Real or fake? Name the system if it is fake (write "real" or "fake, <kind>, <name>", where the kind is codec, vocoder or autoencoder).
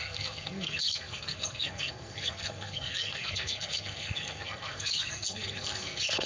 fake, codec, SNAC